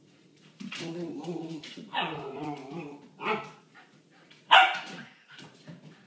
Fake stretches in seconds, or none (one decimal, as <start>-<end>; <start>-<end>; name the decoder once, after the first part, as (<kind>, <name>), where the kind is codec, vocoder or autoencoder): 0.0-2.6 (vocoder, Vocos); 3.6-6.1